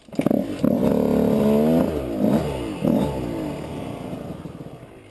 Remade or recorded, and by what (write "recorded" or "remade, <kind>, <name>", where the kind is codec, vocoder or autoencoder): recorded